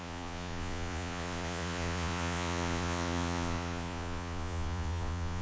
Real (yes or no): no